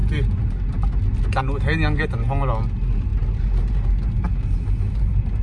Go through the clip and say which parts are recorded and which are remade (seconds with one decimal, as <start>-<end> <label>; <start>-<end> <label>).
0.0-5.4 recorded